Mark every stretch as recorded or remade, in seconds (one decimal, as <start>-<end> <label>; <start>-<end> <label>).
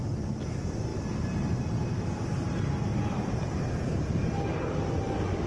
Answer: 0.0-5.5 recorded